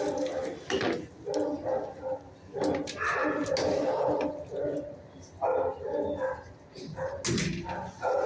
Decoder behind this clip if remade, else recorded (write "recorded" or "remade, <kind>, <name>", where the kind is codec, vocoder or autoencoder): recorded